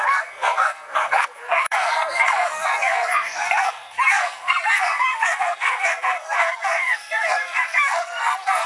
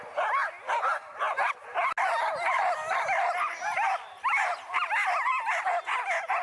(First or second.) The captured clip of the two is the second